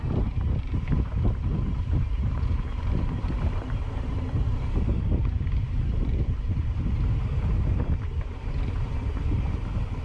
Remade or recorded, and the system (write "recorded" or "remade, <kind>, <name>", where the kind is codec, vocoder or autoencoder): remade, vocoder, BigVGAN v2